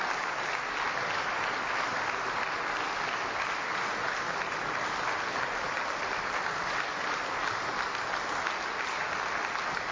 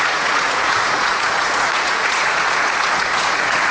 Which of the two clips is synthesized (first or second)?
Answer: second